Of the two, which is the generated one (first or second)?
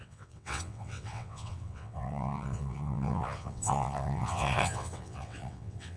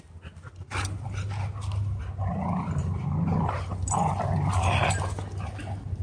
first